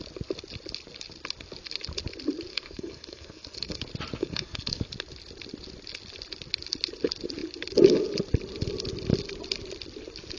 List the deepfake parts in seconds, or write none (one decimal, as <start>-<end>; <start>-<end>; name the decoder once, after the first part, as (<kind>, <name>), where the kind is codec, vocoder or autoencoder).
2.5-3.8 (codec, SNAC); 4.2-4.8